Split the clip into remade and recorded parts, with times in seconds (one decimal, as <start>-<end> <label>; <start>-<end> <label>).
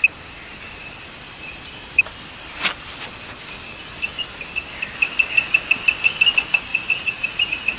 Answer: 0.0-6.7 recorded; 6.7-7.8 remade